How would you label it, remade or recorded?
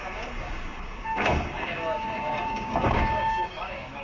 remade